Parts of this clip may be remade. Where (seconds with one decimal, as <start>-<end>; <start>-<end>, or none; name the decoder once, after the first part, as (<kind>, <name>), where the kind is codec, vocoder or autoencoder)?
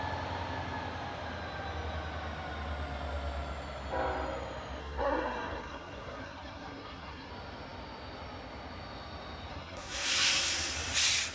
4.8-7.3 (codec, SNAC); 9.5-10.7